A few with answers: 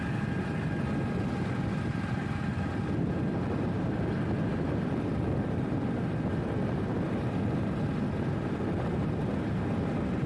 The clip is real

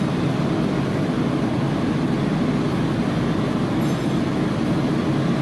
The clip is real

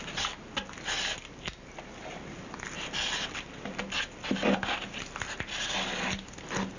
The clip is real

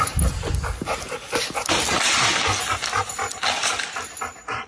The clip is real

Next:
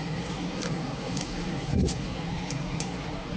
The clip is fake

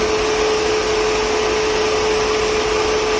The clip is real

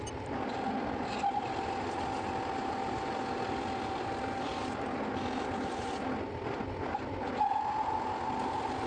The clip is real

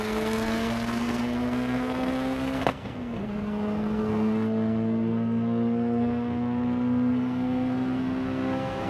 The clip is fake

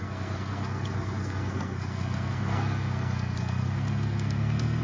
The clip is fake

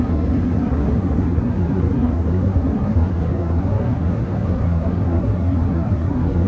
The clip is fake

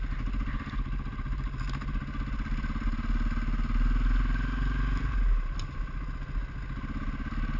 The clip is real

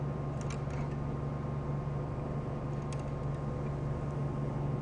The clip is real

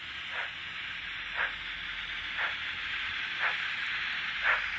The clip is real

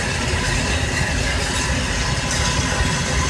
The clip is real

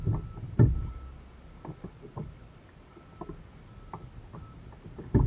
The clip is real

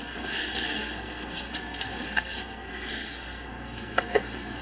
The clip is fake